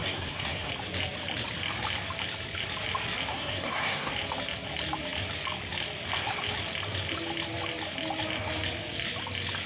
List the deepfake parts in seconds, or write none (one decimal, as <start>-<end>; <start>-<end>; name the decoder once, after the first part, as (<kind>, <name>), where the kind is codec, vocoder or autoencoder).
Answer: 0.0-0.7 (codec, SNAC); 3.3-4.1